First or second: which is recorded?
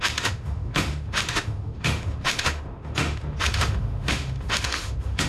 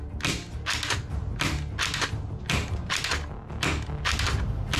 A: second